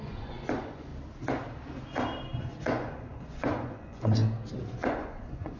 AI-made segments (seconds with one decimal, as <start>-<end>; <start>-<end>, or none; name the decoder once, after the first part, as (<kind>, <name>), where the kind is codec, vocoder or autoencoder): 0.0-0.9 (vocoder, Vocos); 2.4-4.2; 4.7-5.6